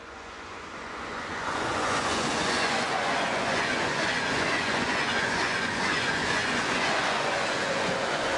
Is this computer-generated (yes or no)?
yes